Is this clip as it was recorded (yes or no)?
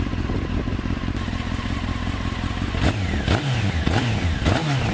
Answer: yes